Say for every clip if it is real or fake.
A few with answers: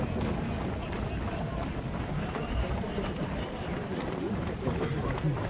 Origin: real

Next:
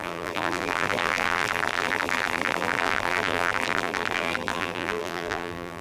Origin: fake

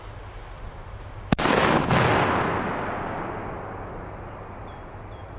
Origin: real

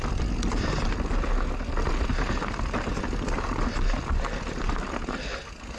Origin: real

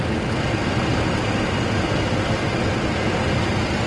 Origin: real